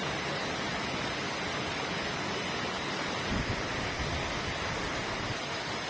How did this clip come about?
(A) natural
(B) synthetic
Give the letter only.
A